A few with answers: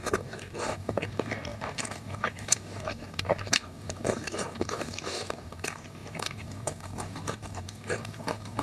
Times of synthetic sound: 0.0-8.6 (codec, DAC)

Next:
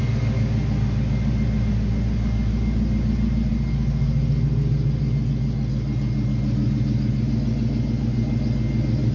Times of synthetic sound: none